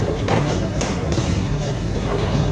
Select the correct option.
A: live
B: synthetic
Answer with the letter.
B